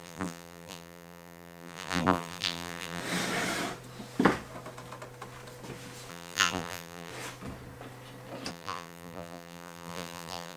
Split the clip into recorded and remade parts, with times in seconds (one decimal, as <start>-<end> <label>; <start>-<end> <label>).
0.0-3.0 remade; 3.0-6.1 recorded; 6.1-7.1 remade; 7.1-8.5 recorded; 8.5-10.6 remade